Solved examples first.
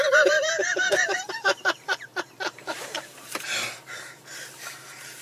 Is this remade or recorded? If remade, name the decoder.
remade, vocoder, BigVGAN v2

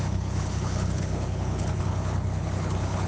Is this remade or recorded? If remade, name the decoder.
remade, codec, HILCodec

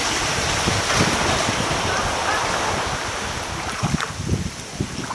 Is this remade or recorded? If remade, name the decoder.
recorded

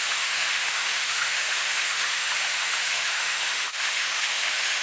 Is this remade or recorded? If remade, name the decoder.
remade, autoencoder, DAC-VAE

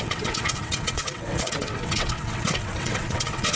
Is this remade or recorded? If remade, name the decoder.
remade, vocoder, WaveNeXt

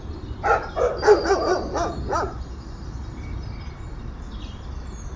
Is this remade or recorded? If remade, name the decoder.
remade, vocoder, BigVGAN v2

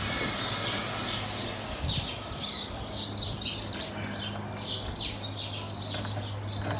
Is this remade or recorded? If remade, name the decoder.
recorded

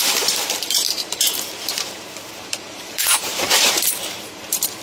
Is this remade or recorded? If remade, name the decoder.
remade, vocoder, BigVGAN v2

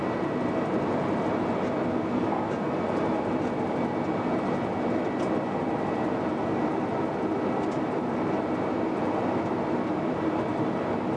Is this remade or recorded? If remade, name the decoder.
recorded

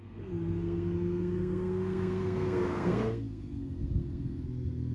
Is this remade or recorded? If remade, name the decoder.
remade, codec, SNAC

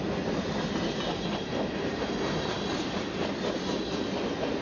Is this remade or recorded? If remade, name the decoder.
recorded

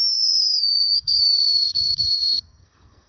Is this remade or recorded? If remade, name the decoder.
remade, codec, SNAC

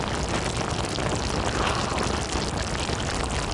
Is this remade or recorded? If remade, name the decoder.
recorded